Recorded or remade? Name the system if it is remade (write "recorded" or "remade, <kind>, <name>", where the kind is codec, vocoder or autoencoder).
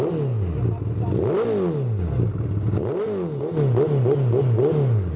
recorded